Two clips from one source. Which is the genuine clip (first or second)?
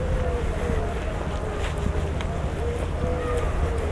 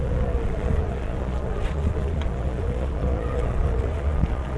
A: first